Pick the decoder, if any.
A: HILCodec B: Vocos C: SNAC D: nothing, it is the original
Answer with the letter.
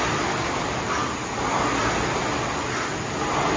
D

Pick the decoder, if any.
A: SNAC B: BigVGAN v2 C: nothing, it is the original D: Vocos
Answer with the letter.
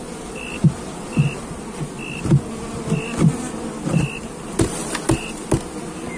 C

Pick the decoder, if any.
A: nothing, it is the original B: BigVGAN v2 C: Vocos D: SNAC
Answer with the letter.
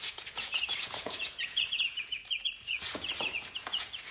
C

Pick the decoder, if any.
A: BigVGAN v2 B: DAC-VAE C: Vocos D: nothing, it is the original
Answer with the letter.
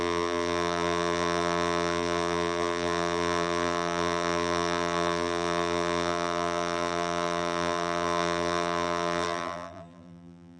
A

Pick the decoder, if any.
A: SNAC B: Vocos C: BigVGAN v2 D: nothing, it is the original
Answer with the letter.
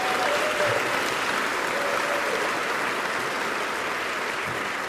D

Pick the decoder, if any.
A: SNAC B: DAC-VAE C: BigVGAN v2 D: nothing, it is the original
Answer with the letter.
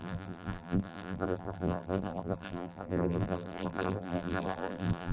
C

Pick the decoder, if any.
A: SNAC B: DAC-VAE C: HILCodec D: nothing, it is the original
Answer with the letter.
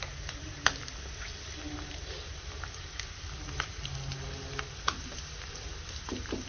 D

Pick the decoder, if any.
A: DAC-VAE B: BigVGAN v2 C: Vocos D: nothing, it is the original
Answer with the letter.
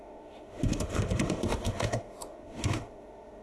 A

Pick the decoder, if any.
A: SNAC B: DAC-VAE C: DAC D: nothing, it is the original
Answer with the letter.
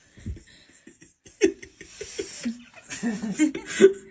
D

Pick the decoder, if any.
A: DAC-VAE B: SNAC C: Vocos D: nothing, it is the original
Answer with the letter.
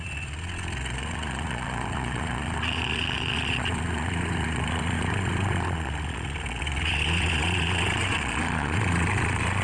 C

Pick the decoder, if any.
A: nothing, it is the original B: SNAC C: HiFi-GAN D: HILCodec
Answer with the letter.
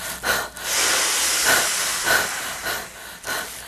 A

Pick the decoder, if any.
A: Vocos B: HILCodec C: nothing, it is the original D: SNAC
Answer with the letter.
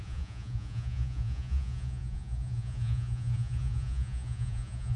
A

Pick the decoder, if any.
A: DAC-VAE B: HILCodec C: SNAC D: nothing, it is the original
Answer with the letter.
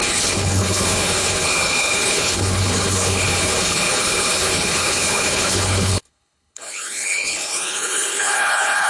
B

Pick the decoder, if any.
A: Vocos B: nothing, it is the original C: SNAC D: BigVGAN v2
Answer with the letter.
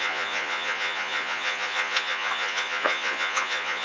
A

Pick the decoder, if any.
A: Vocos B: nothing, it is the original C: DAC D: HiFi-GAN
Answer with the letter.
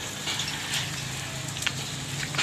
B